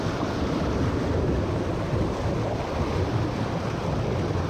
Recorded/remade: recorded